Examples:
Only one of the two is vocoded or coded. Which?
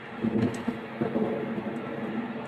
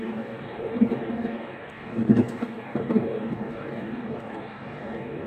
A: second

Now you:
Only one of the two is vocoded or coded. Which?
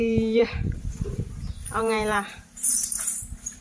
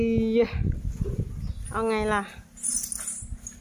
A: first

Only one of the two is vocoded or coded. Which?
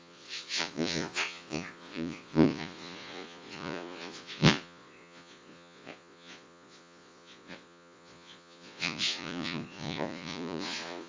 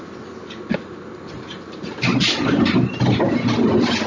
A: first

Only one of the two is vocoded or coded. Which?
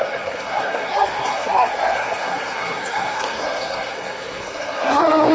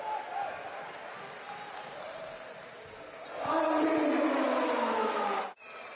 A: first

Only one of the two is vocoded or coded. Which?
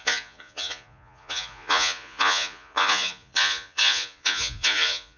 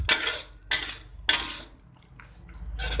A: first